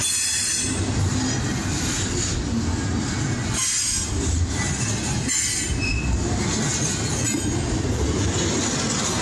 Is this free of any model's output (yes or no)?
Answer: yes